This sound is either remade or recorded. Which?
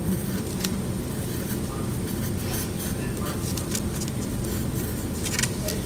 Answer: recorded